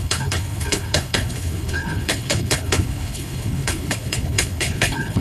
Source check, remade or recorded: remade